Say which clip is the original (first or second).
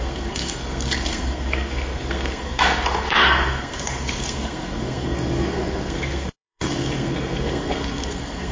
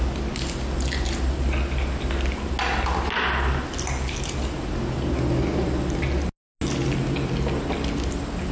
second